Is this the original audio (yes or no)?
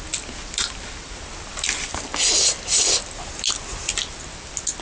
yes